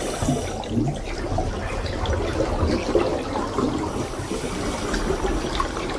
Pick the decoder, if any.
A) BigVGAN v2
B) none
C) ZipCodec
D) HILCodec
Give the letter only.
B